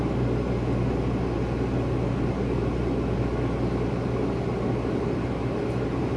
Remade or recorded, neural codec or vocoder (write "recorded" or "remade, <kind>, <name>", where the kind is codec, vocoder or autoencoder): recorded